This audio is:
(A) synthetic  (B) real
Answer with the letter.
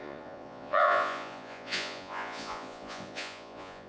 A